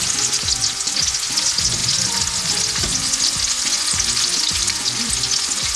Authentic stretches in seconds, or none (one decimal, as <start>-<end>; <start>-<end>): none